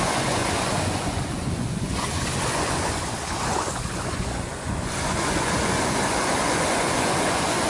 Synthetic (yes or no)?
yes